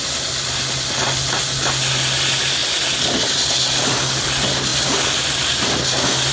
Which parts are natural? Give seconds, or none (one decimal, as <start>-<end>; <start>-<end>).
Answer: 0.0-6.3